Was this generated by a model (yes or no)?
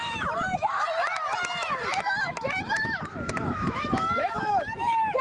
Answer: yes